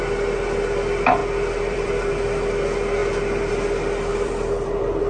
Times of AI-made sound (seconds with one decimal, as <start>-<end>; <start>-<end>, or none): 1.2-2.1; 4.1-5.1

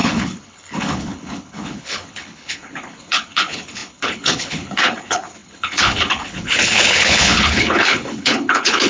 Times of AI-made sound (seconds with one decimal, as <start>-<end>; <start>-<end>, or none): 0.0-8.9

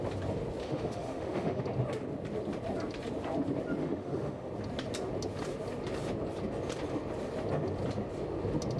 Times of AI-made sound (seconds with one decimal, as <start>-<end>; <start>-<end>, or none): 0.6-1.6; 3.8-4.5

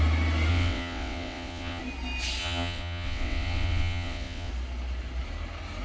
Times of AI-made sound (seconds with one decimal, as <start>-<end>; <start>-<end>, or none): 0.5-1.8; 2.4-4.5

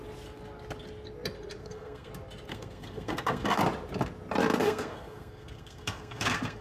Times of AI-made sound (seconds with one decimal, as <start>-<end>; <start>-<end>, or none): 1.6-2.1; 2.5-3.6; 4.6-6.6